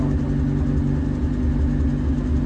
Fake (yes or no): no